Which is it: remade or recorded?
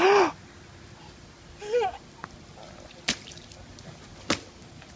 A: recorded